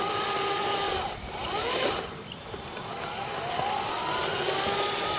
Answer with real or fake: real